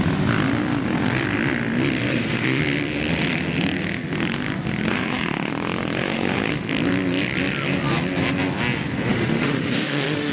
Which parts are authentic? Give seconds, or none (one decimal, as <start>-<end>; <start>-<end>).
0.0-2.1; 2.6-4.9; 5.5-6.0; 6.5-9.1